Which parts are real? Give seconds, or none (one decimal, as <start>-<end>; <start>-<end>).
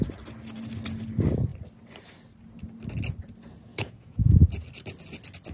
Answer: 0.0-3.7; 4.5-5.5